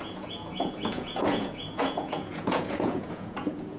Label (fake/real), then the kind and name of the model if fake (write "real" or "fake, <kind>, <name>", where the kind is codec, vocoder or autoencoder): fake, vocoder, Vocos